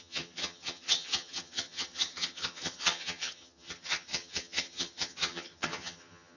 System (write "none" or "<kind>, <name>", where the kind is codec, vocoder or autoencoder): vocoder, HiFi-GAN